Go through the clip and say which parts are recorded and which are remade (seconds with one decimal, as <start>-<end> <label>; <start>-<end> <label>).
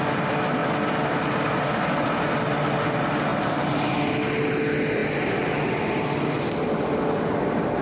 0.0-7.8 recorded